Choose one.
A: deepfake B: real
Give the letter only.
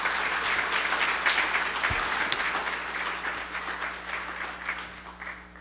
B